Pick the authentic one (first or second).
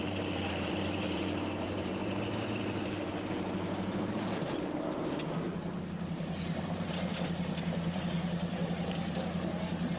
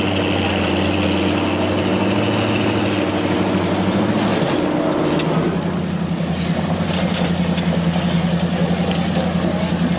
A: second